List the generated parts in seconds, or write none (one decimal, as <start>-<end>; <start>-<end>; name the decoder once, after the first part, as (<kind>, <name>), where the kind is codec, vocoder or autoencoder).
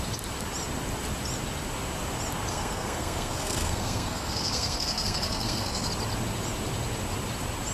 2.5-5.9 (codec, SNAC)